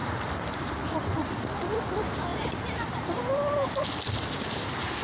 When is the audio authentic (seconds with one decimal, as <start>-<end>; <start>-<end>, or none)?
1.3-2.3; 3.2-5.0